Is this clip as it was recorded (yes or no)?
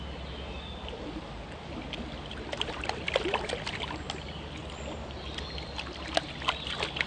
yes